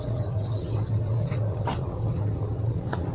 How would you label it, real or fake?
fake